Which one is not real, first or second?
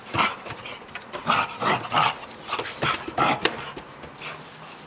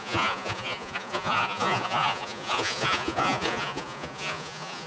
second